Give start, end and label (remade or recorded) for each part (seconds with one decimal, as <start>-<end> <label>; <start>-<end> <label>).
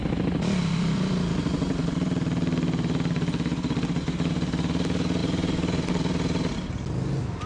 0.0-1.9 remade; 1.9-5.2 recorded; 5.2-5.9 remade; 5.9-7.5 recorded